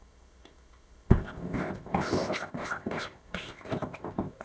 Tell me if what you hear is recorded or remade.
remade